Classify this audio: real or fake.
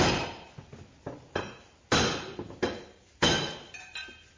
real